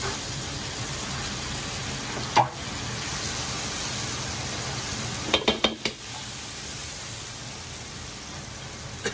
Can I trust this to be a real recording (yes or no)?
yes